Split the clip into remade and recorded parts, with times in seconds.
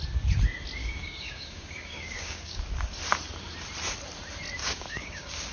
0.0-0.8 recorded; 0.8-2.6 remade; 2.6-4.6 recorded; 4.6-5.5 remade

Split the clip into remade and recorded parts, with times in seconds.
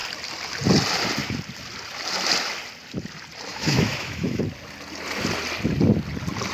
0.0-3.5 recorded; 3.5-4.4 remade; 4.4-6.5 recorded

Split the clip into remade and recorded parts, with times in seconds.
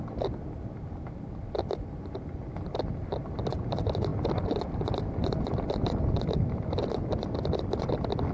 0.0-8.3 recorded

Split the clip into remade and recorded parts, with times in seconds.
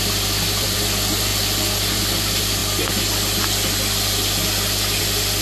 0.0-1.3 remade; 1.3-2.0 recorded; 2.0-2.6 remade; 2.6-5.0 recorded; 5.0-5.4 remade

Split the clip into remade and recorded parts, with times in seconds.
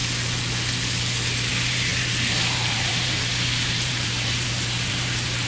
0.0-1.5 recorded; 1.5-5.5 remade